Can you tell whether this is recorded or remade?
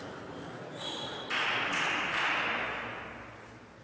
recorded